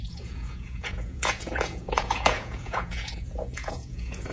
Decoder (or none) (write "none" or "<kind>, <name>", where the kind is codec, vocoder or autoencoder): vocoder, Vocos